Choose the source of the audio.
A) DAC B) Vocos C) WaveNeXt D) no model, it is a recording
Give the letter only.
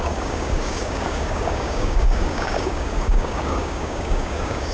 A